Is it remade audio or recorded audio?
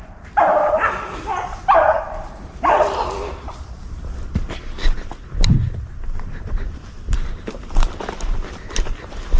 recorded